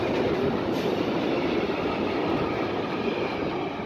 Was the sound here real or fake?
real